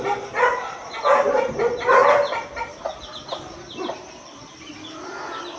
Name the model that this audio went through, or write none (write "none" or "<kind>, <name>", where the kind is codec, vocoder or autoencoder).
none